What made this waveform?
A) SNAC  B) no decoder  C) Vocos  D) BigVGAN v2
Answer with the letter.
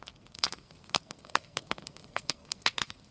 A